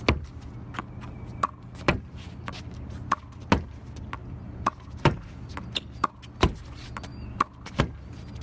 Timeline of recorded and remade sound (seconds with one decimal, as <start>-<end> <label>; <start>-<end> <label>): 0.0-4.2 recorded; 4.2-5.3 remade; 5.3-7.1 recorded; 7.1-7.8 remade; 7.8-8.4 recorded